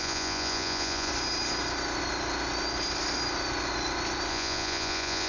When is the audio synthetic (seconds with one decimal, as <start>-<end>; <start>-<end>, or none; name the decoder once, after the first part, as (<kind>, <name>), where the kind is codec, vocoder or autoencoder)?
0.0-1.1 (vocoder, Vocos); 4.3-5.3